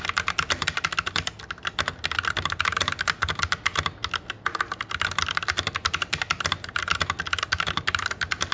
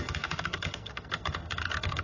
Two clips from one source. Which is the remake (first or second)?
second